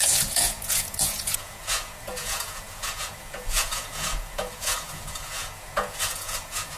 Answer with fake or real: fake